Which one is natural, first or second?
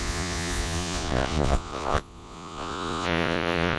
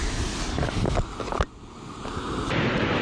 second